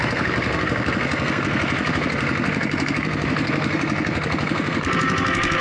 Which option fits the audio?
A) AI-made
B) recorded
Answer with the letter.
A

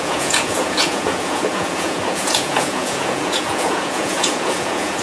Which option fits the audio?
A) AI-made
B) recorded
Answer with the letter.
A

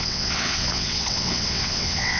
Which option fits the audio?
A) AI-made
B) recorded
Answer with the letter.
A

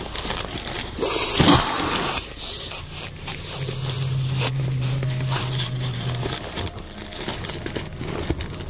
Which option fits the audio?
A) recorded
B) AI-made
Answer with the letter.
A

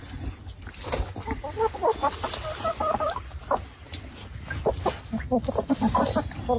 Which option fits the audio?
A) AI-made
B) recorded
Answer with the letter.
B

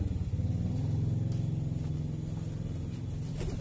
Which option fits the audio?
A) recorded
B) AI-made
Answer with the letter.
A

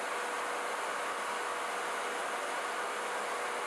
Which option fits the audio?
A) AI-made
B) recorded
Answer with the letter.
B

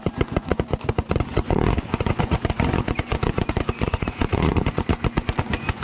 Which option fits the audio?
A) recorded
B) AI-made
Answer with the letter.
B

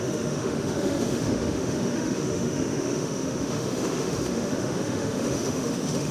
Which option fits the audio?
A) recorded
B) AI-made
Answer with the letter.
B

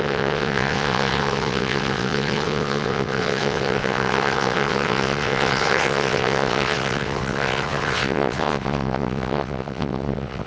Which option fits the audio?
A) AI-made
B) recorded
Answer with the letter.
A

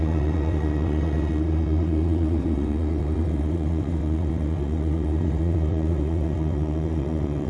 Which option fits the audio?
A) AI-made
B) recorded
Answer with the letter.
A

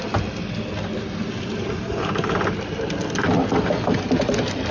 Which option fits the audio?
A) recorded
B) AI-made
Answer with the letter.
A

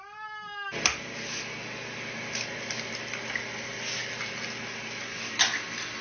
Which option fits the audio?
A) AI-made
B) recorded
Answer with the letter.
B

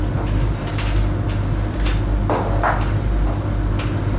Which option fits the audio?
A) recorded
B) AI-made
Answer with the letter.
A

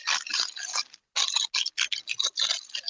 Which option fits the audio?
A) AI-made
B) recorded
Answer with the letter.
B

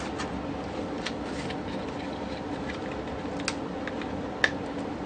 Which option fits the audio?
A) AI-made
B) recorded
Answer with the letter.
B